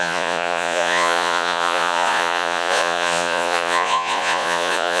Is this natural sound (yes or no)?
no